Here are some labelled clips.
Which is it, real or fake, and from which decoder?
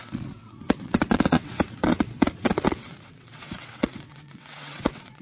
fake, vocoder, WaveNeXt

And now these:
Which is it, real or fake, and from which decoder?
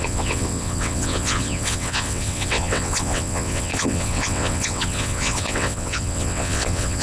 fake, vocoder, WaveNeXt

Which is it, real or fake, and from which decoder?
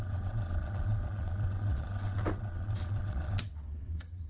fake, vocoder, WaveNeXt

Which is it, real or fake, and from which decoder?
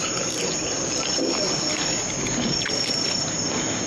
real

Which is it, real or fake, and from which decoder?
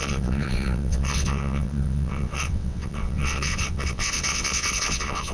fake, vocoder, WaveNeXt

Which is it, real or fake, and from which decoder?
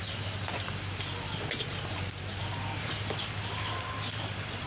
real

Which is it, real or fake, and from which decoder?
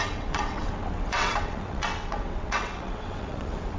fake, vocoder, WaveNeXt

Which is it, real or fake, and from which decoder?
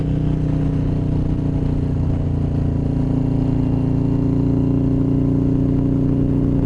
real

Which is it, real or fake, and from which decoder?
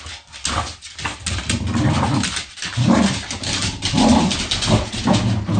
real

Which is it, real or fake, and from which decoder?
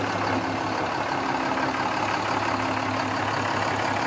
real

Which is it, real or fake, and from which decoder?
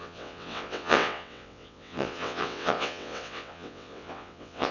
fake, vocoder, WaveNeXt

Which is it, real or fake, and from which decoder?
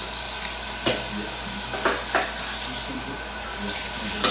real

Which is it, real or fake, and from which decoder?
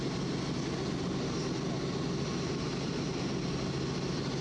real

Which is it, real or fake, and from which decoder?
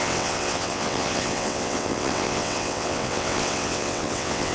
fake, vocoder, WaveNeXt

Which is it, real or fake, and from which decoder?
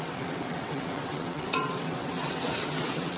fake, vocoder, WaveNeXt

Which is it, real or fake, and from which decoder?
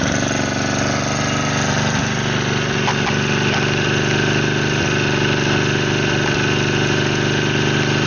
real